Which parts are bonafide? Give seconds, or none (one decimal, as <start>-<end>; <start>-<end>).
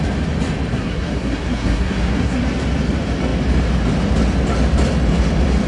0.0-0.7; 2.4-5.7